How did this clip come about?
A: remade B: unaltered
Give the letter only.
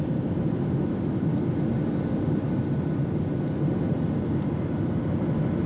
B